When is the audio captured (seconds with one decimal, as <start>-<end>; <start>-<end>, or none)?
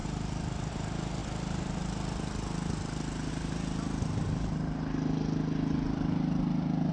0.0-6.9